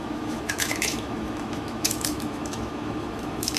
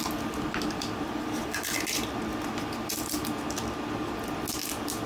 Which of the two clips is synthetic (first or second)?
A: first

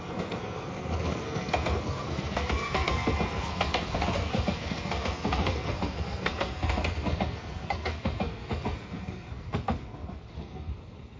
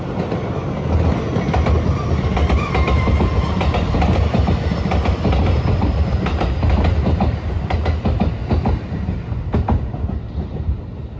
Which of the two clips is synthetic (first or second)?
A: first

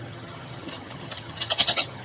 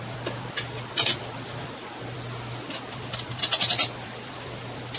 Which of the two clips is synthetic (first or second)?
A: first